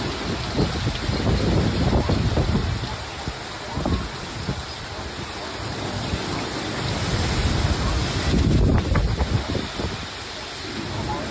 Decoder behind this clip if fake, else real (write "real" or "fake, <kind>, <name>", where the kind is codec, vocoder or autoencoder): real